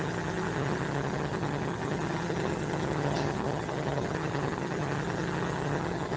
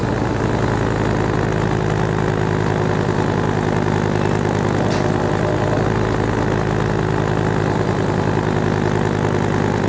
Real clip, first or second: second